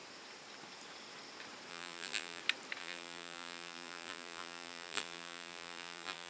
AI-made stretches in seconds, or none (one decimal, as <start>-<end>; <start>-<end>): 1.7-2.4; 2.8-6.3